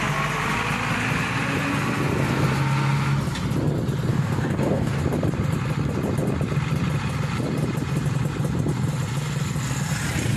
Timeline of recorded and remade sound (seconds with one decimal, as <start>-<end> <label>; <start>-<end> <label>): 0.0-4.1 recorded; 4.1-5.0 remade; 5.0-10.4 recorded